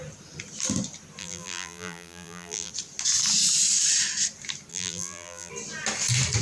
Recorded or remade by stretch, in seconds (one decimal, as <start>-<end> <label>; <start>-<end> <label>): 0.0-1.2 recorded; 1.2-2.7 remade; 2.7-4.7 recorded; 4.7-5.5 remade; 5.5-6.4 recorded